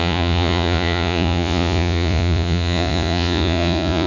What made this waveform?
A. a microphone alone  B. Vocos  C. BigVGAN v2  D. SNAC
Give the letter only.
B